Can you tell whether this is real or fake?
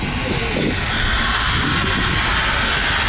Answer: real